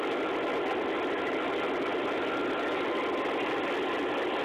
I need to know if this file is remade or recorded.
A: recorded